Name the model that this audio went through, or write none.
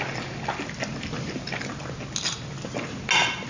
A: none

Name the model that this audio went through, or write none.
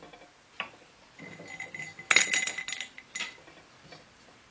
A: none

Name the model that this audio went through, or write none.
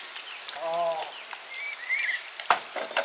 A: none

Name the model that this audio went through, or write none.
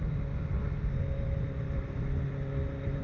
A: none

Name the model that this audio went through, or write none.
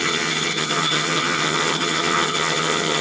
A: vocoder, HiFi-GAN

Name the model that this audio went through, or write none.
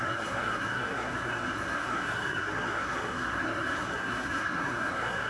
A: codec, SNAC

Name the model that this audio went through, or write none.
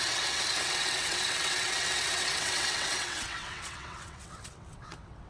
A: vocoder, WaveNeXt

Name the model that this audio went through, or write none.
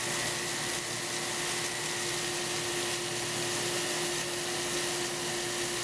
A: none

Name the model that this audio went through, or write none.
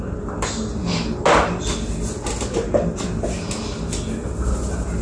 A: none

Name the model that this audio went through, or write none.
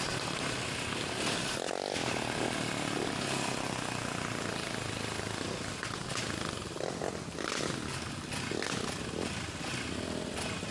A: none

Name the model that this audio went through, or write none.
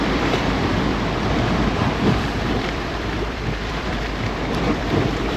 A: vocoder, BigVGAN v2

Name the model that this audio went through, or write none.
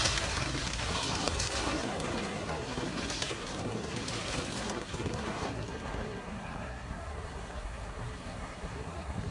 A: codec, SNAC